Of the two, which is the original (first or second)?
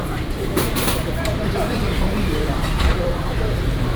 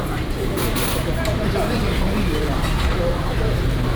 second